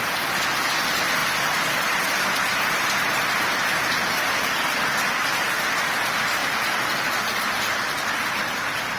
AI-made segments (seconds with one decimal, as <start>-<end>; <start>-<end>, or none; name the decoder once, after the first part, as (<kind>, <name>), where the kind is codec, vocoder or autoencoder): 1.2-3.8 (vocoder, BigVGAN v2); 6.4-7.0